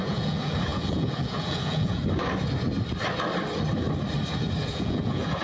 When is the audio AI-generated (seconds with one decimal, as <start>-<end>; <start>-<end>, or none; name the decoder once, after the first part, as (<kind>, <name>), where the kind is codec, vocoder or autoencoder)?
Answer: 0.0-2.0 (vocoder, Vocos); 4.6-5.4